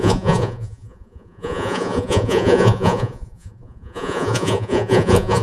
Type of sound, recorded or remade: remade